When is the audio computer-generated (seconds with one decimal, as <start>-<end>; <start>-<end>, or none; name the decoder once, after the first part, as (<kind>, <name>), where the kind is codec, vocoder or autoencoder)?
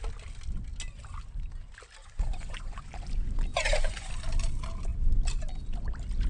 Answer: 2.0-2.9 (vocoder, Vocos); 3.5-4.1